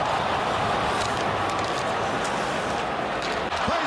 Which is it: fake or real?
real